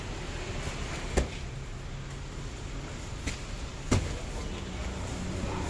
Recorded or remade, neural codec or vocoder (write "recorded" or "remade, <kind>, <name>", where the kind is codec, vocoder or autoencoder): recorded